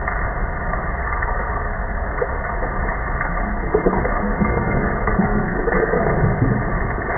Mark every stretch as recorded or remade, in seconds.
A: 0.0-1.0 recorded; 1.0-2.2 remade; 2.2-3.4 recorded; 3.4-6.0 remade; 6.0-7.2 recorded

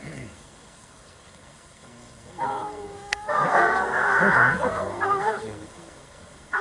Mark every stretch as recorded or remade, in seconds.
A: 0.0-6.6 remade

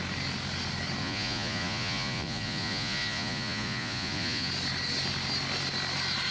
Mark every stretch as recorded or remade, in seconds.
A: 0.0-1.0 recorded; 1.0-4.5 remade; 4.5-6.3 recorded

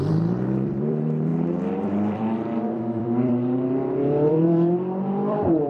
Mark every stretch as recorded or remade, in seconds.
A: 0.0-5.7 remade

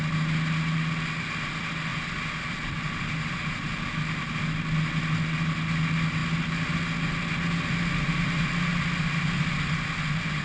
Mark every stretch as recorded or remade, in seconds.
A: 0.0-10.4 recorded

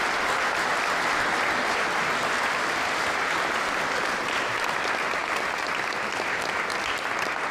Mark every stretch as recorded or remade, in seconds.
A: 0.0-7.5 recorded

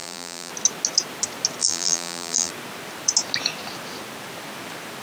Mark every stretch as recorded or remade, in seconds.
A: 0.0-0.5 remade; 0.5-1.6 recorded; 1.6-2.5 remade; 2.5-5.0 recorded

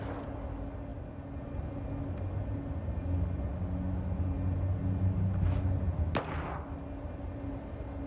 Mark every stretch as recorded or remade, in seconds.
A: 0.0-8.1 recorded